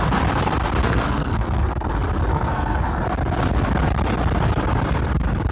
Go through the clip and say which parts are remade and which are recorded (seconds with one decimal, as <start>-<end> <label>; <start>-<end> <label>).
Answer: 0.0-0.8 recorded; 0.8-1.9 remade; 1.9-2.3 recorded; 2.3-3.0 remade; 3.0-5.5 recorded

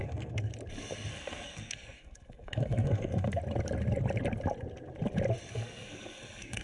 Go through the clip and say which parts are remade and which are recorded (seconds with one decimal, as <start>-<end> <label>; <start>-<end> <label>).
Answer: 0.0-0.5 remade; 0.5-1.1 recorded; 1.1-3.4 remade; 3.4-5.5 recorded; 5.5-6.6 remade

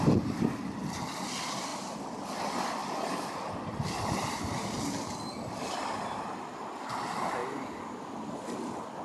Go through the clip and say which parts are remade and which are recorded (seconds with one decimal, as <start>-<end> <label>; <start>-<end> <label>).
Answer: 0.0-9.0 recorded